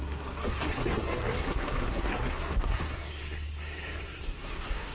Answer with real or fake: fake